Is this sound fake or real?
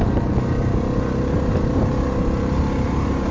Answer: real